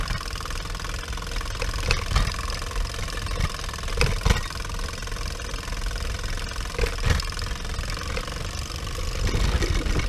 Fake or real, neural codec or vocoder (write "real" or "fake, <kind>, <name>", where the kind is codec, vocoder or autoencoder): real